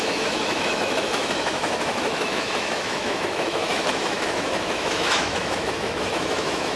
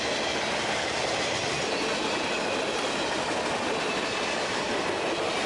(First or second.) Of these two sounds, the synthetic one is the first